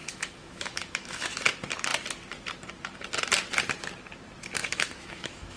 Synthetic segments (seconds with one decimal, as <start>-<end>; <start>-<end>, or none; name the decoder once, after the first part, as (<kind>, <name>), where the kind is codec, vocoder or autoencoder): 0.0-1.4 (autoencoder, DAC-VAE); 4.6-5.6